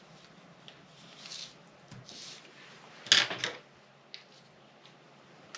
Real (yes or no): yes